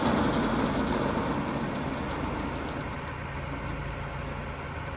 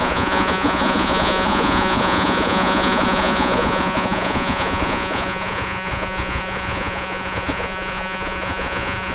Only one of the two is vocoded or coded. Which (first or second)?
second